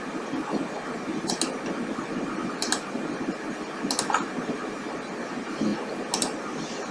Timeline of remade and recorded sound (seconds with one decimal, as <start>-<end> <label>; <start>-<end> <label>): 0.0-6.9 recorded